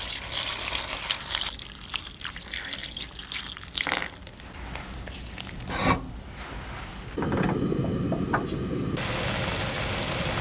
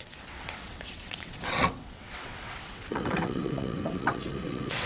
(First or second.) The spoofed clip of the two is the second